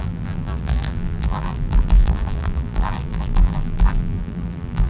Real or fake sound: fake